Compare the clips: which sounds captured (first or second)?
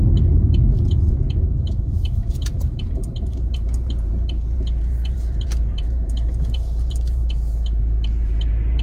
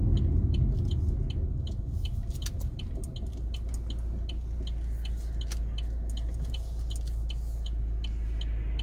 second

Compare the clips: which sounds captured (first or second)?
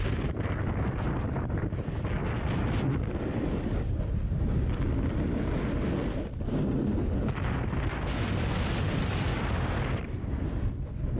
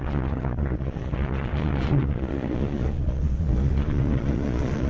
first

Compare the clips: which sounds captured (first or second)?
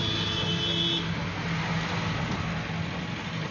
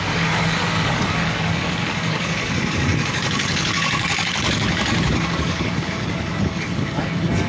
first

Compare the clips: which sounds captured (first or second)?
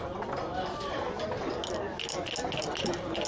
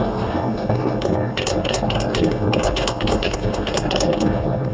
first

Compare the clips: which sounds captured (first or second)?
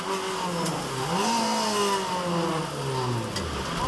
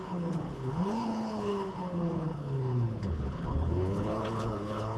first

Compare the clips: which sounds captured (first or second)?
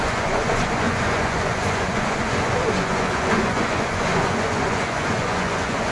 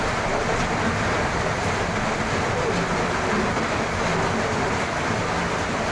second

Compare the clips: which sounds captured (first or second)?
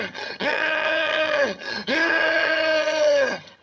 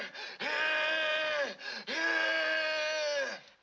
second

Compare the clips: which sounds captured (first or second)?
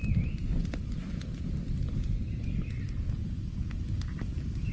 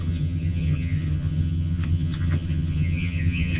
first